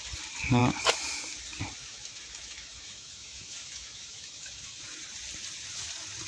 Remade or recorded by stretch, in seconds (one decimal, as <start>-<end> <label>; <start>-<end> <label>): 0.0-1.8 recorded; 1.8-4.8 remade; 4.8-6.3 recorded